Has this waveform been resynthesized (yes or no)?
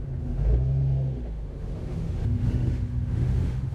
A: yes